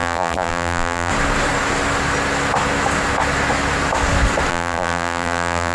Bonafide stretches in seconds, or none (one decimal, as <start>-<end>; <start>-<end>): 1.1-4.5